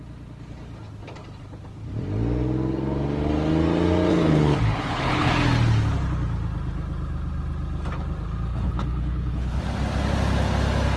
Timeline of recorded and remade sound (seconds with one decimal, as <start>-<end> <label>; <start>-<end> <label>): 0.0-4.1 recorded; 4.1-5.3 remade; 5.3-8.5 recorded; 8.5-9.6 remade; 9.6-11.0 recorded